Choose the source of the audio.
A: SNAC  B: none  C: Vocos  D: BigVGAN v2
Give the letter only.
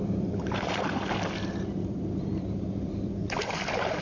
D